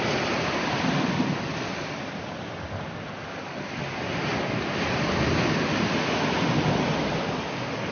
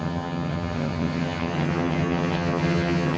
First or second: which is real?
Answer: first